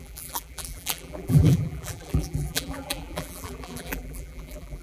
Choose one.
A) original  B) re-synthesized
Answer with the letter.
B